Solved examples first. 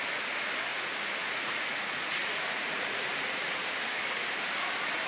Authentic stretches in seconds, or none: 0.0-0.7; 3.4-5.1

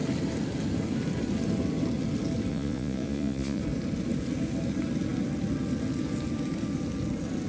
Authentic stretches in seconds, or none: 0.0-2.5; 3.6-7.5

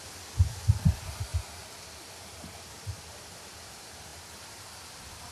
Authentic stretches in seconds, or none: 0.0-5.3

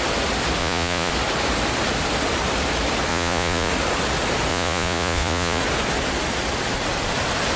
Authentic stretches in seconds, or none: 0.0-0.6; 1.1-3.1; 3.7-4.5; 5.6-7.6

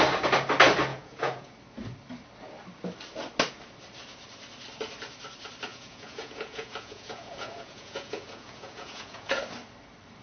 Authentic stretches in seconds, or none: 0.0-0.9; 1.5-5.7; 9.4-10.2